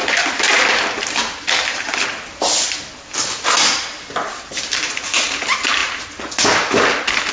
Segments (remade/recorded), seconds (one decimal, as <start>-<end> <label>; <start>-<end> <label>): 0.0-2.8 remade; 2.8-7.3 recorded